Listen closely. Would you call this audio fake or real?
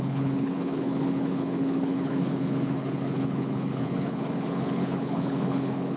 fake